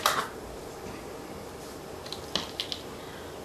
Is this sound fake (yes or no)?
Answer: no